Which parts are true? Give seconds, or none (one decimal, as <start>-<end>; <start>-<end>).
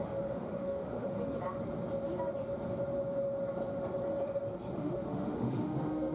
1.1-4.8